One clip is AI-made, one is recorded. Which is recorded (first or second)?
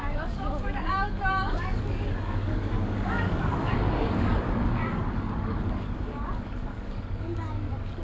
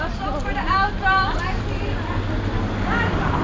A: second